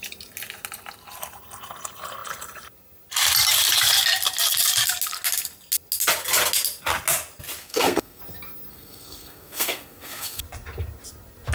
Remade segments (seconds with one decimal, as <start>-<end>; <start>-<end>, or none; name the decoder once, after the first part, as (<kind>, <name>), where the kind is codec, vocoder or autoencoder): 7.6-8.2 (codec, SNAC); 8.7-10.4